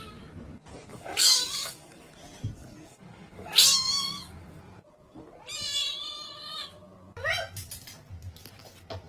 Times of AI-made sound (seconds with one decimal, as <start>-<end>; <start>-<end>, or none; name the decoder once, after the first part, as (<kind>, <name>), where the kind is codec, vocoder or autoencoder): 0.9-2.1 (codec, DAC); 2.9-4.6

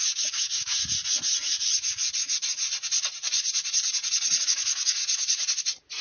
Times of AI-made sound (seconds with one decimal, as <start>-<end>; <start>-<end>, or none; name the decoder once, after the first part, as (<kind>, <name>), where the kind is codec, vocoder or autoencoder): 0.0-0.8 (codec, DAC); 4.4-5.0

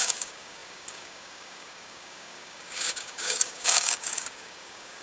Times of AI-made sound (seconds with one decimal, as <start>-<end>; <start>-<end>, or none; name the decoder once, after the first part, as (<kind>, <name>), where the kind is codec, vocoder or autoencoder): 0.0-5.0 (codec, DAC)

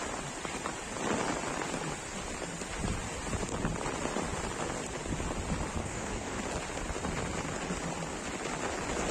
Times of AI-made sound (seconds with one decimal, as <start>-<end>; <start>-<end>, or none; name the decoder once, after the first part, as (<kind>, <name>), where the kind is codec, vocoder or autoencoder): 5.8-6.4 (codec, DAC)

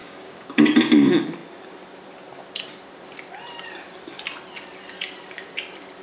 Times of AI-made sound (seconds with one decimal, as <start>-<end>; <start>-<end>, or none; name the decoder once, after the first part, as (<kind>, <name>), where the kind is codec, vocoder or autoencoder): 0.0-0.7 (codec, DAC)

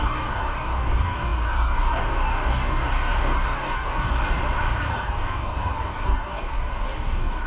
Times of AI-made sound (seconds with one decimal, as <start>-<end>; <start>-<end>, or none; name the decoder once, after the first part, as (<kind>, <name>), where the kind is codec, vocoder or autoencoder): 0.0-4.4 (codec, DAC); 4.9-7.5

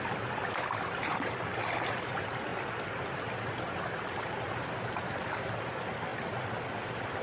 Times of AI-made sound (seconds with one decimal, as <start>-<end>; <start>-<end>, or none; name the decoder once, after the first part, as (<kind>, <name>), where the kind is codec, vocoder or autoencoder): none